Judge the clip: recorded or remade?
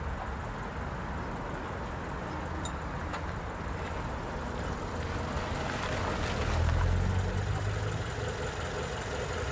recorded